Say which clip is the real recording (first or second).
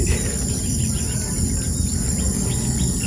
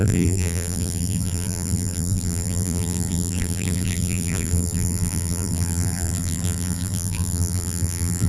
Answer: first